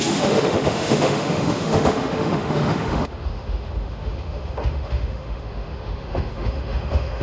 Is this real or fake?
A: fake